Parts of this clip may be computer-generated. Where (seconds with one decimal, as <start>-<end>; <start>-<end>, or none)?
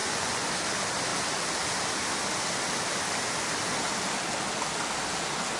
0.0-0.5